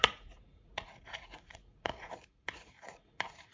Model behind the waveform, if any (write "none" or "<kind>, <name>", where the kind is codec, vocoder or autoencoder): vocoder, Vocos